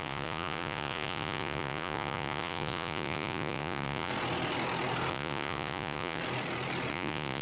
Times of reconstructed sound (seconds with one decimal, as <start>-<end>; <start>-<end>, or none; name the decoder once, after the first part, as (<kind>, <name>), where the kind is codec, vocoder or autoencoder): 0.0-4.1 (vocoder, Vocos); 5.1-6.2; 6.9-7.4